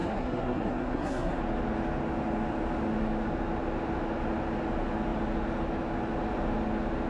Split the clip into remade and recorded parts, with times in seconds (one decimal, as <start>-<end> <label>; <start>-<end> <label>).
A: 0.0-1.4 remade; 1.4-7.1 recorded